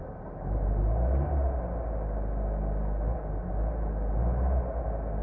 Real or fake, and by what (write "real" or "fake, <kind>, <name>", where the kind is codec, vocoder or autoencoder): real